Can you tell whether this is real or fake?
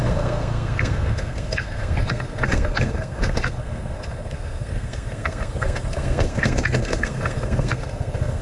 fake